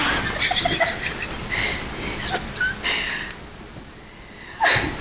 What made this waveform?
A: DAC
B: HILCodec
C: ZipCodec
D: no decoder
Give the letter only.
D